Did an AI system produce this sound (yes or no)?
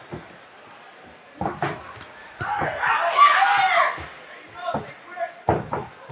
no